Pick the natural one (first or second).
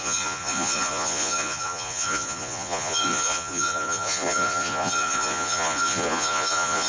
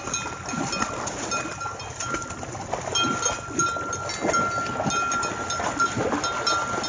second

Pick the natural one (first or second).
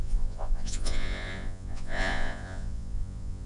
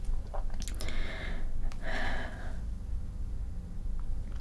second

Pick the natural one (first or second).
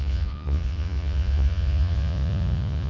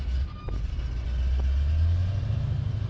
second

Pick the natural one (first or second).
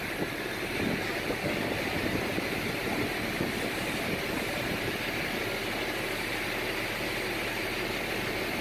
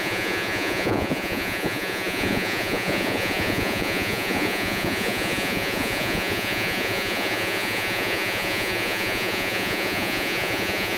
first